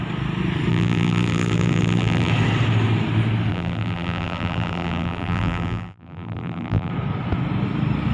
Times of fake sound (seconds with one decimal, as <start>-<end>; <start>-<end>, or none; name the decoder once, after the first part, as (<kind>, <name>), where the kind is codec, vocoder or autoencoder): 0.7-2.3 (vocoder, BigVGAN v2); 3.5-6.9